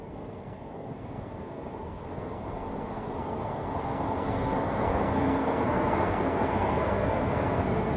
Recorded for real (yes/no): no